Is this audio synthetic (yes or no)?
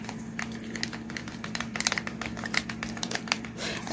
yes